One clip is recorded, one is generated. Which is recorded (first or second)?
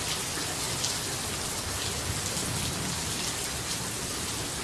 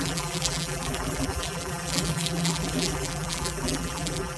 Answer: first